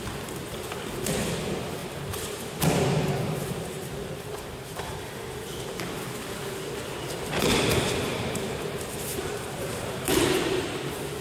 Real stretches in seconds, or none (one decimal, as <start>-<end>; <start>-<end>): 0.0-1.8; 4.4-8.1; 10.2-11.2